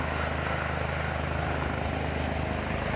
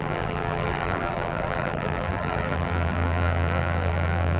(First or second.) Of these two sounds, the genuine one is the first